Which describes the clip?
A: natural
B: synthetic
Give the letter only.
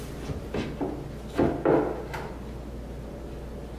A